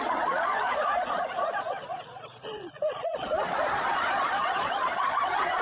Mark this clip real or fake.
fake